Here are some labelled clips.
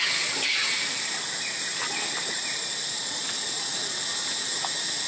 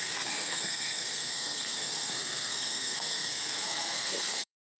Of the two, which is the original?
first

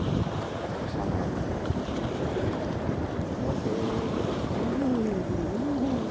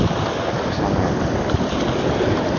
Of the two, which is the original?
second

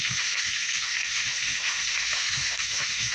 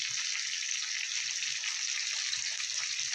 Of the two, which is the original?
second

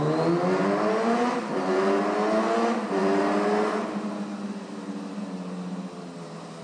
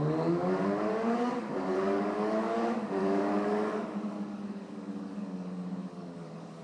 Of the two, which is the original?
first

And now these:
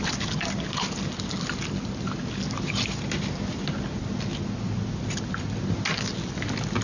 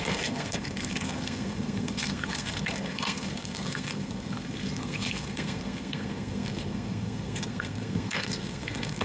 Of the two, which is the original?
first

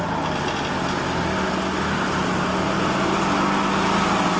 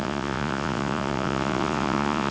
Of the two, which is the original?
first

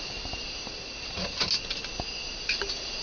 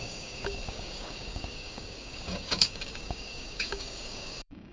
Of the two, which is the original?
first